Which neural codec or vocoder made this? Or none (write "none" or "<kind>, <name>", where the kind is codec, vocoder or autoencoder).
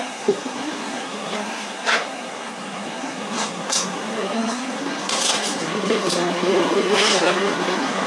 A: codec, SNAC